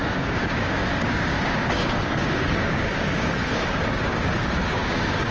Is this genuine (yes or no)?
no